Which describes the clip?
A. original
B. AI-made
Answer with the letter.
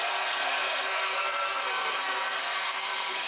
B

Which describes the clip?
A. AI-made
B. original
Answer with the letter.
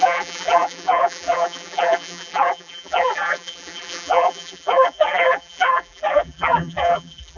A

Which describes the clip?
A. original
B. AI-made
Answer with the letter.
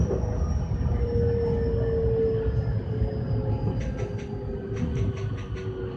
A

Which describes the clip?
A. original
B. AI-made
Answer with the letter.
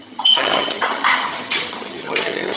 B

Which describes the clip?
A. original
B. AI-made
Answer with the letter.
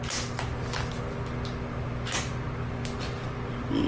A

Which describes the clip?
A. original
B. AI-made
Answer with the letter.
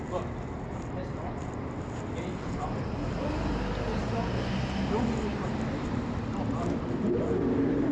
A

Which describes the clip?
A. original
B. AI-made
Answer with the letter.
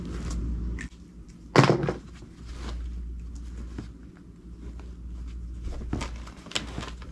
A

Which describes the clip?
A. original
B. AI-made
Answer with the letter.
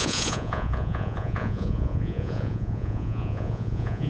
B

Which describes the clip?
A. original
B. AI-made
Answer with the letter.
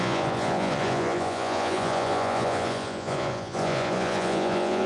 B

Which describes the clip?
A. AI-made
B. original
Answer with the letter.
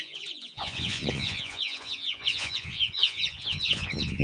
A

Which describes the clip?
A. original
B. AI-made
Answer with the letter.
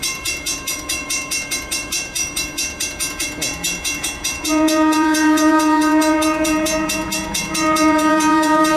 B